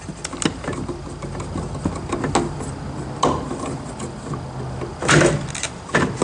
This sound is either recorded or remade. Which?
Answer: recorded